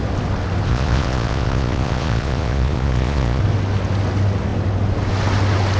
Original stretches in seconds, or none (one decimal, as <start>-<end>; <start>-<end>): 0.0-0.7; 3.4-5.8